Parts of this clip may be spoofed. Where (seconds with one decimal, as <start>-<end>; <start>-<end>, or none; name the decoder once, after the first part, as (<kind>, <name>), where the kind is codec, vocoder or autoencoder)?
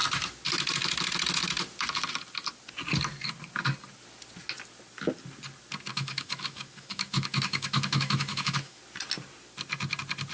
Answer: 5.9-8.8 (autoencoder, DAC-VAE)